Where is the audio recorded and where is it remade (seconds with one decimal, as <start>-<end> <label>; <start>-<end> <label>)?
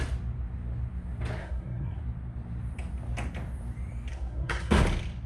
0.0-1.4 recorded; 1.4-2.0 remade; 2.0-4.1 recorded; 4.1-4.8 remade; 4.8-5.3 recorded